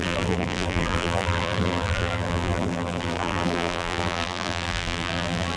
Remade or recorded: remade